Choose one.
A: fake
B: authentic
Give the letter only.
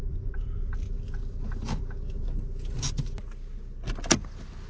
B